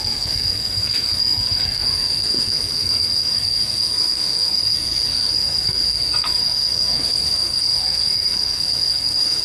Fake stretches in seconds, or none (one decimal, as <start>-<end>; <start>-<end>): 0.0-9.4